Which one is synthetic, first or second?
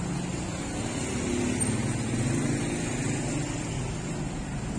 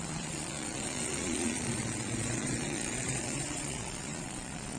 second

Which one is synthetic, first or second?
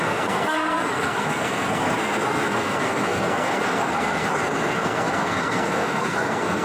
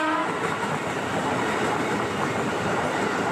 first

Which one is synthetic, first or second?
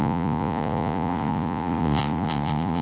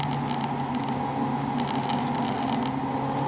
first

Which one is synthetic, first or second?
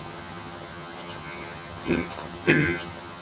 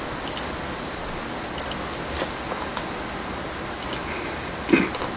first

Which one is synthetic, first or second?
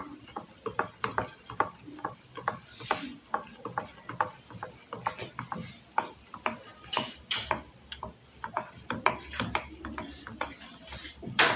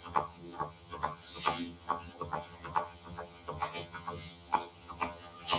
second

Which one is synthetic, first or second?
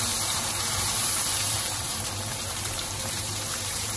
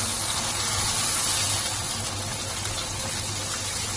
first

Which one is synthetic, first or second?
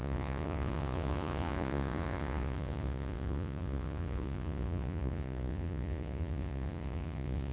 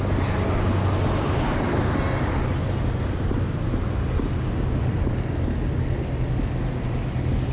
first